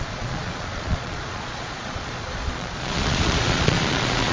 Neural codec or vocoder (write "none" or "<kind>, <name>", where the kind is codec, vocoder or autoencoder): vocoder, Vocos